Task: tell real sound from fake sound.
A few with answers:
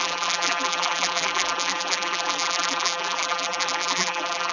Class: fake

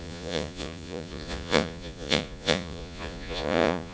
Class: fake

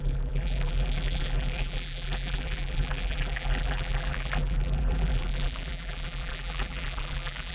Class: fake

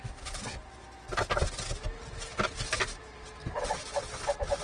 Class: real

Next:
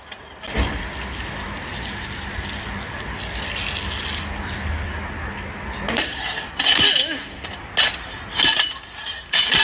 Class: real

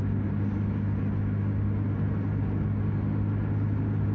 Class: real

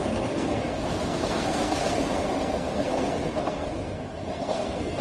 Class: fake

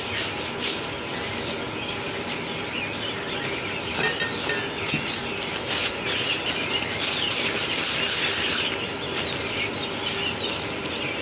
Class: real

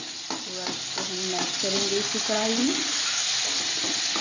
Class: real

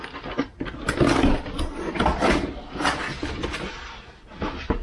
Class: real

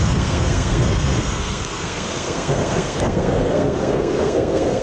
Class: fake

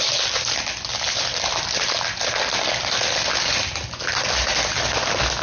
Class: real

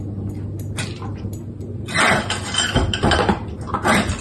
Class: real